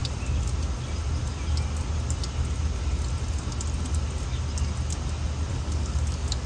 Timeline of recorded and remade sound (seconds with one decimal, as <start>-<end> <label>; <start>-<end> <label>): 0.0-5.5 recorded; 5.5-6.5 remade